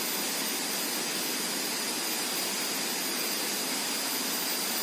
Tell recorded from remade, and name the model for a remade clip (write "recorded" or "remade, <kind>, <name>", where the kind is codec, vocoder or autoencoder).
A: recorded